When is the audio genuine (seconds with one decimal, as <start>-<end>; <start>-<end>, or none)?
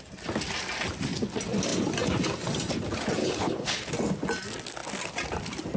0.0-3.2; 3.9-5.8